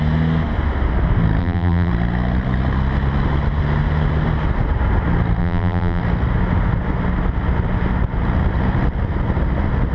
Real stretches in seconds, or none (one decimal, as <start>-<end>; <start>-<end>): 0.0-1.4; 1.9-5.4; 6.0-9.9